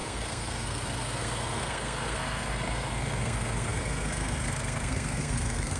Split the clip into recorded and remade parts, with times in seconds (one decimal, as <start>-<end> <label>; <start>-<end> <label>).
0.0-5.8 remade